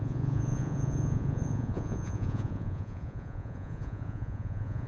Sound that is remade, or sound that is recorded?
remade